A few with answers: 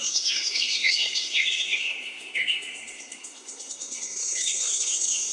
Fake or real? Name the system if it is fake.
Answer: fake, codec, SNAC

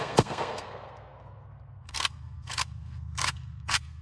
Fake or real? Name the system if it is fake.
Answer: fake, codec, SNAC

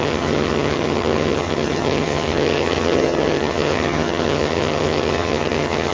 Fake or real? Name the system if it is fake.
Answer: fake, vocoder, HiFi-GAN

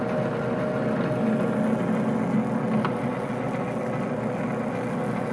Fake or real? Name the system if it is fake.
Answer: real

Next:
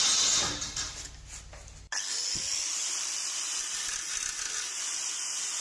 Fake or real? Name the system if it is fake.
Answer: real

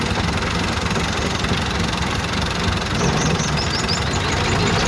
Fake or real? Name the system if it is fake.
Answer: real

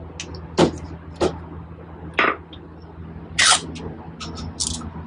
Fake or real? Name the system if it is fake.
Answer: real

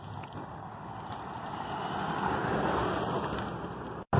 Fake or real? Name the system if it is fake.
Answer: real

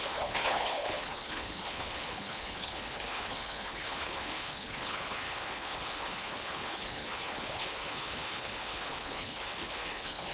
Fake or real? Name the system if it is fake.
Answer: fake, codec, HILCodec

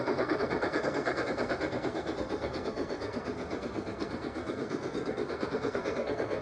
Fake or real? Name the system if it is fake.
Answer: fake, codec, SNAC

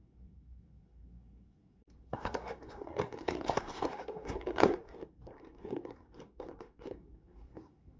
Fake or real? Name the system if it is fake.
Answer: fake, codec, SNAC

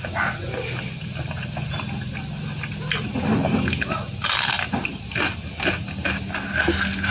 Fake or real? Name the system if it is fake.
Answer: real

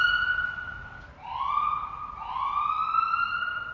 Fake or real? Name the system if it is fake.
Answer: real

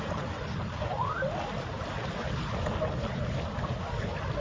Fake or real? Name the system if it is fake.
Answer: real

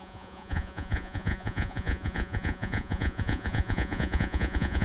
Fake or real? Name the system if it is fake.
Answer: fake, vocoder, Vocos